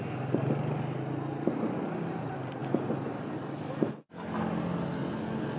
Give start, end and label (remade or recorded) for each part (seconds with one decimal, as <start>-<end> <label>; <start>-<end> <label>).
0.0-5.6 recorded